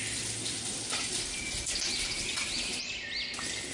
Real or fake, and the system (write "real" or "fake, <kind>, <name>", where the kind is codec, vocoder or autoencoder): real